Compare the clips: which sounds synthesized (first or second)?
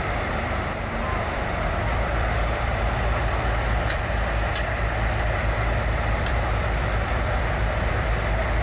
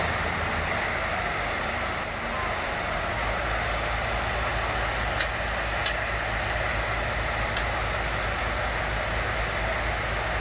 first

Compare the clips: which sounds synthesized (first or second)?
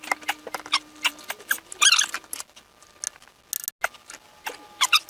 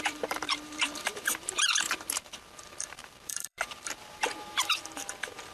second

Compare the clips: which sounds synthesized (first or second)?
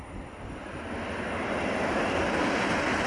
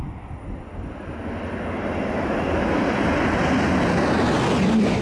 first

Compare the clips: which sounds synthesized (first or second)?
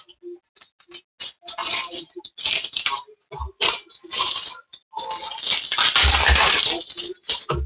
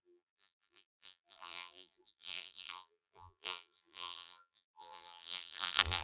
second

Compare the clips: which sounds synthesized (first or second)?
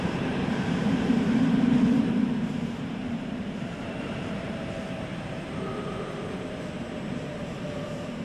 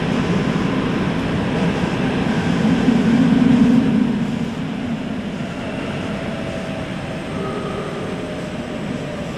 first